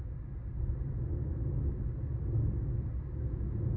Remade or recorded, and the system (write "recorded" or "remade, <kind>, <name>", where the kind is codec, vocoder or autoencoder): recorded